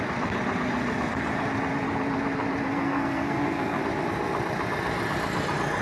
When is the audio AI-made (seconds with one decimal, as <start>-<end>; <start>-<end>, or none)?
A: 2.7-3.8